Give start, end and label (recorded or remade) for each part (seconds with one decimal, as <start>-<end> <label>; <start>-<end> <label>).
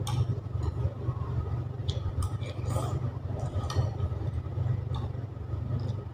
0.0-1.8 recorded; 1.8-4.0 remade; 4.0-6.1 recorded